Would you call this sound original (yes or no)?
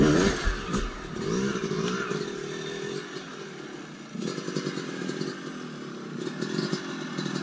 yes